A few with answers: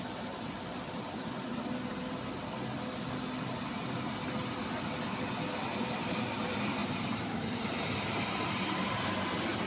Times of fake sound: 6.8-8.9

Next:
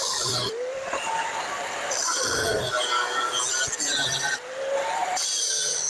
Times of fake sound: 0.0-5.9

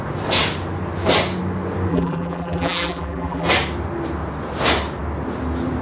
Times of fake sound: 1.9-3.5

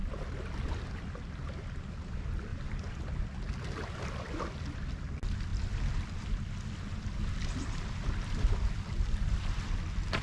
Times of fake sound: 0.0-1.6; 2.5-3.2

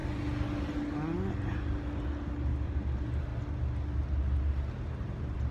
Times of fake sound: 2.5-3.3; 4.7-5.5

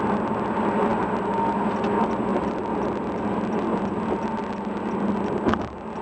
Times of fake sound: none